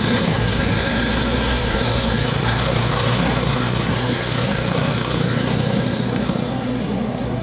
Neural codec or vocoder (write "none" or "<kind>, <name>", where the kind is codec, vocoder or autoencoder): codec, SNAC